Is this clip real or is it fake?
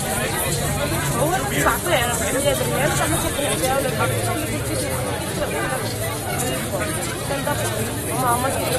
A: real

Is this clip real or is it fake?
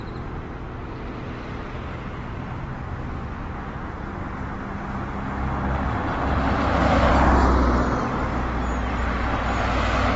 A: real